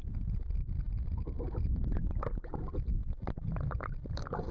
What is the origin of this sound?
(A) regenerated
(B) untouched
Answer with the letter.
B